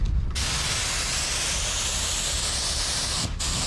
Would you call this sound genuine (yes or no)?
yes